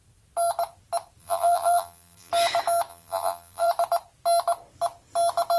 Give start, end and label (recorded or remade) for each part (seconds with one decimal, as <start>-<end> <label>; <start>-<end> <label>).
0.0-1.2 recorded; 1.2-2.3 remade; 2.3-2.9 recorded; 2.9-3.7 remade; 3.7-5.6 recorded

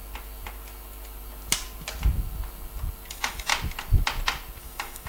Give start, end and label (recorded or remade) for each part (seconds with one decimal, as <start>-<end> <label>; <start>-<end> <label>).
0.0-3.1 recorded; 3.1-3.5 remade; 3.5-4.6 recorded; 4.6-5.1 remade

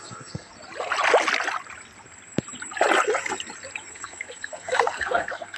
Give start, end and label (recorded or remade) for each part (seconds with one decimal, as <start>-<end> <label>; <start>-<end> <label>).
0.0-0.5 remade; 0.5-3.9 recorded; 3.9-5.6 remade

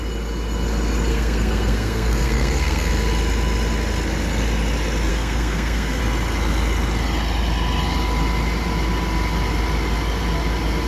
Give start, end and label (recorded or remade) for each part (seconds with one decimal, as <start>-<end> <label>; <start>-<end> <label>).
0.0-1.1 recorded; 1.1-2.9 remade; 2.9-5.1 recorded; 5.1-6.0 remade; 6.0-10.9 recorded

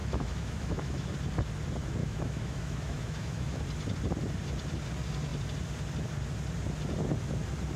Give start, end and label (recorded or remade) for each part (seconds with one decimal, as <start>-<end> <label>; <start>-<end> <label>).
0.0-1.1 remade; 1.1-2.0 recorded; 2.0-3.6 remade; 3.6-7.8 recorded